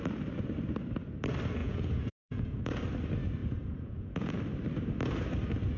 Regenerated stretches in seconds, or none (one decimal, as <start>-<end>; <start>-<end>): 1.6-2.8; 3.4-4.4